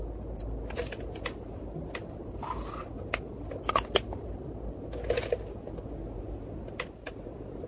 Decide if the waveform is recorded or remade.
recorded